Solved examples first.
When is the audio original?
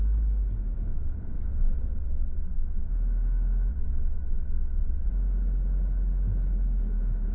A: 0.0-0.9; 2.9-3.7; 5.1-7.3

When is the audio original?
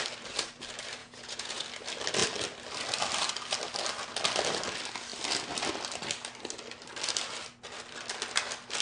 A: 0.0-1.0; 1.6-8.8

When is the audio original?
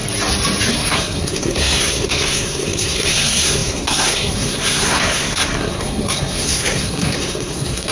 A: 0.0-0.7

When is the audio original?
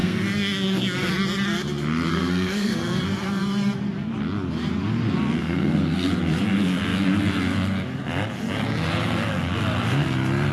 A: 1.1-2.1; 3.0-5.4; 6.1-10.5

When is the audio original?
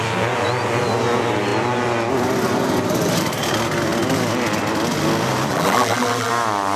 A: 0.0-5.5; 6.3-6.8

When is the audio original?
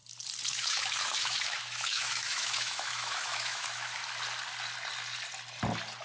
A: 0.0-0.5; 4.0-6.0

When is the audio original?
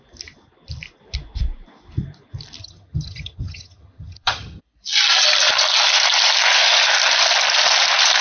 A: 0.0-2.6; 4.6-8.2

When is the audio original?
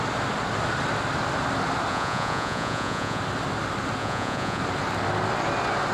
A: 0.0-1.9; 3.2-4.0; 4.6-5.9